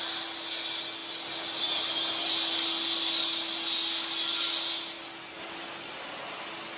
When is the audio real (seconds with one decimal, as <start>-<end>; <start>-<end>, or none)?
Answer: 0.0-6.8

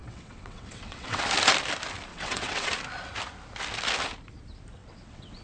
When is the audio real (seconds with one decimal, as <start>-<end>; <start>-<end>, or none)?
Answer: 1.2-2.1; 2.7-4.8